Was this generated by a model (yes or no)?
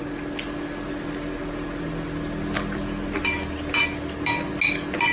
no